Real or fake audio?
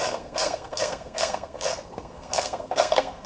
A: fake